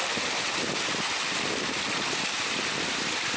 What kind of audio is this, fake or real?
fake